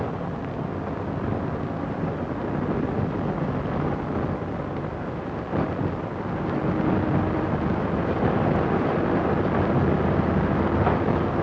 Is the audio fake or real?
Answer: real